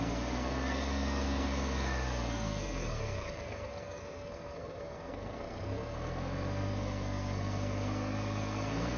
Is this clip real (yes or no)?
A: no